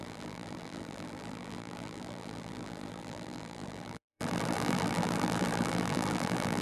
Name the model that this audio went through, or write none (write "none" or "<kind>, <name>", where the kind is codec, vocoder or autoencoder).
vocoder, BigVGAN v2